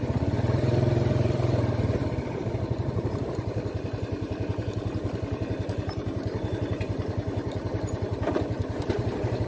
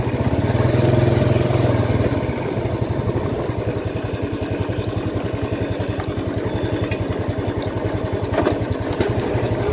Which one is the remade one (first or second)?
first